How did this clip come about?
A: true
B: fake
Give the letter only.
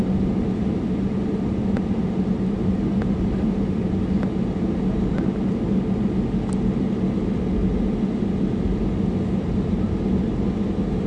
A